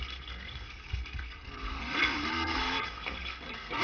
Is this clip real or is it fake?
fake